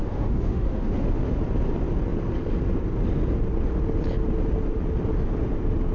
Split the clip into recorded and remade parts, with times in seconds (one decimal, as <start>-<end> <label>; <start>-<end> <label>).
0.0-1.3 remade; 1.3-5.9 recorded